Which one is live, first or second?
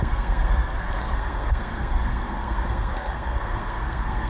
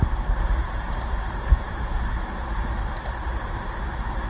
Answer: second